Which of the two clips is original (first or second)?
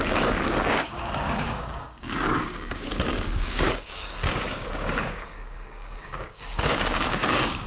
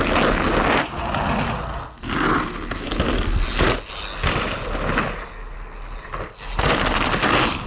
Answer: second